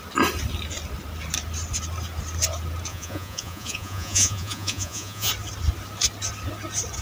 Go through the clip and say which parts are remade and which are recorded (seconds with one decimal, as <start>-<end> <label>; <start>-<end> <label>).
0.0-2.9 recorded; 2.9-5.3 remade; 5.3-7.0 recorded